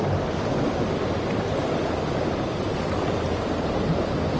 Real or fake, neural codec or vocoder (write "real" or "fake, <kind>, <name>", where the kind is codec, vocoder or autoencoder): real